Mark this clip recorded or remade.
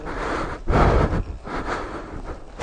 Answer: recorded